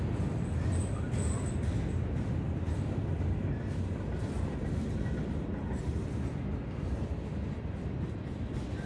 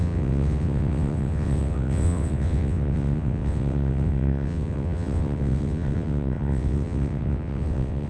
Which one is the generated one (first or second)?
second